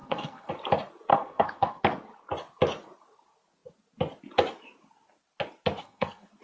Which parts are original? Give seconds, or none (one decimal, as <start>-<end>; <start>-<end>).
0.5-1.1; 1.8-5.8